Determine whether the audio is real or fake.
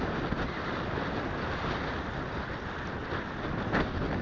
real